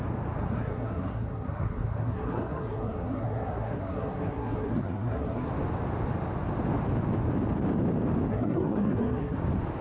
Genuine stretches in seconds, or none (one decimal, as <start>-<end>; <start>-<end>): 0.0-0.4; 5.5-8.3; 9.4-9.8